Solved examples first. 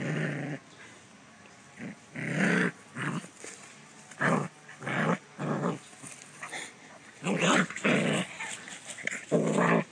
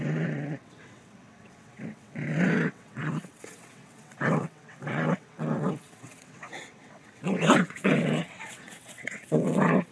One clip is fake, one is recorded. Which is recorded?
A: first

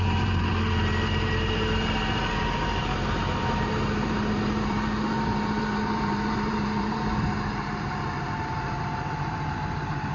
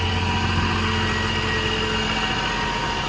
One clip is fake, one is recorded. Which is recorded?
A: second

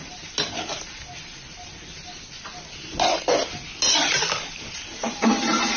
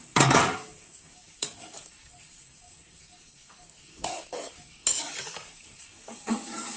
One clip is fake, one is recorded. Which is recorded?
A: first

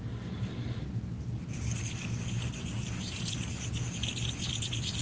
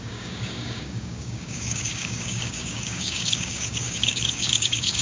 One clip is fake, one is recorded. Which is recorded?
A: first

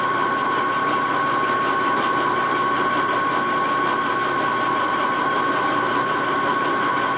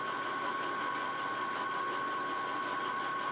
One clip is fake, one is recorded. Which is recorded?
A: second